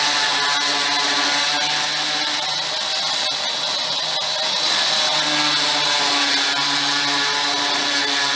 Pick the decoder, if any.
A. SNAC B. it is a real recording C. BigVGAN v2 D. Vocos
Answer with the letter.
B